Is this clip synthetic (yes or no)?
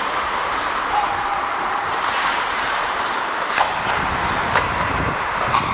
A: yes